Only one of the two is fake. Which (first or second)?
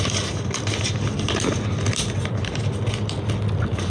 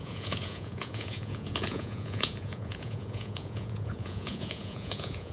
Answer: second